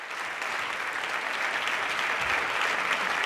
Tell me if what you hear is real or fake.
real